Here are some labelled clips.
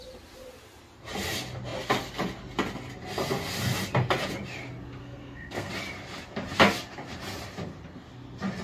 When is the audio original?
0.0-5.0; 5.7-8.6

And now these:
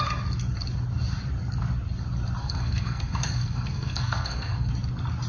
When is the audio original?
0.0-2.4; 4.7-5.3

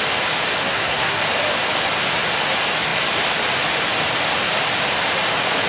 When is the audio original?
0.0-0.6; 1.2-5.7